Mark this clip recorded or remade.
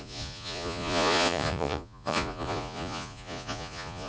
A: remade